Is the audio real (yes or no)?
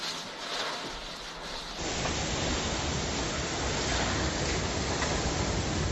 yes